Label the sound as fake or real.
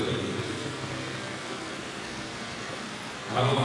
fake